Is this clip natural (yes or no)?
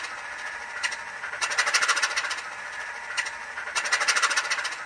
yes